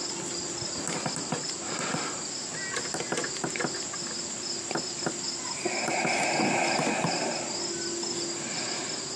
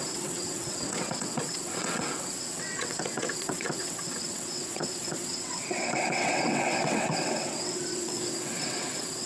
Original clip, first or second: first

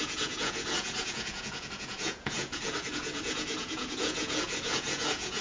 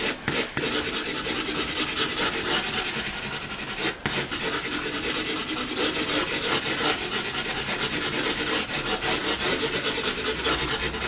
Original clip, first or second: second